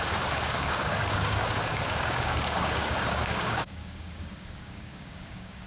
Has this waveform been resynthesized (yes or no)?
yes